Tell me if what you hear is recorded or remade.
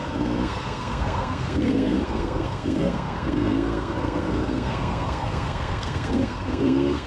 remade